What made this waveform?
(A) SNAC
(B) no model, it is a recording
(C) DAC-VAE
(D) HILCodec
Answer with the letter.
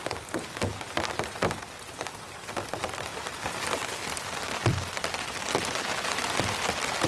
B